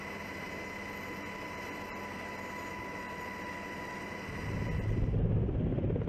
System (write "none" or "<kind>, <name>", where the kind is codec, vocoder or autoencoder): none